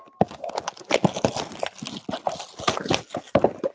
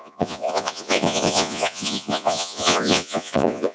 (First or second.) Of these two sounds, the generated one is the second